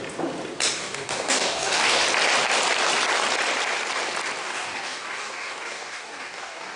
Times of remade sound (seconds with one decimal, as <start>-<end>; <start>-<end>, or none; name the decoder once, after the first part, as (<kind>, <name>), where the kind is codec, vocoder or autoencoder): 0.8-2.0 (codec, DAC); 4.4-6.8